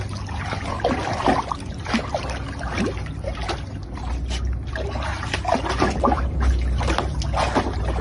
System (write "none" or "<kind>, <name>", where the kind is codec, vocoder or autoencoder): none